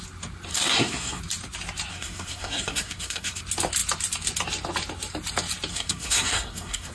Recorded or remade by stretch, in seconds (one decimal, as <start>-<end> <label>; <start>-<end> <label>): 0.0-0.5 recorded; 0.5-1.2 remade; 1.2-1.9 recorded; 1.9-3.4 remade; 3.4-5.7 recorded; 5.7-6.9 remade